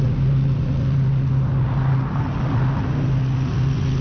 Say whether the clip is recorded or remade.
recorded